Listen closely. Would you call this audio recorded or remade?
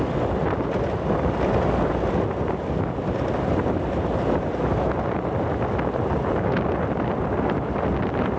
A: recorded